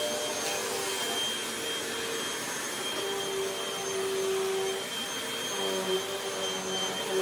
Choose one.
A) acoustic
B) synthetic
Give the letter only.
A